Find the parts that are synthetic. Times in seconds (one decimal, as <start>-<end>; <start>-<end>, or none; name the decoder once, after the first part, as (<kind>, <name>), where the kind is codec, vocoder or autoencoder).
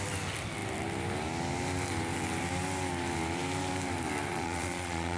4.3-5.2 (vocoder, Vocos)